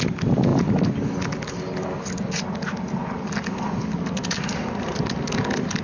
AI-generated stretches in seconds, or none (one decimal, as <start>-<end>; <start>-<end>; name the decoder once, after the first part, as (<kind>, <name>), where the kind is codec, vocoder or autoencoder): 3.0-5.8 (vocoder, BigVGAN v2)